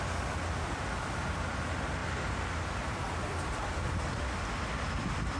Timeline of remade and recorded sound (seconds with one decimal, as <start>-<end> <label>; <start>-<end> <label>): 0.0-5.4 remade